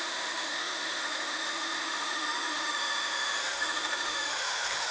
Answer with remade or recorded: remade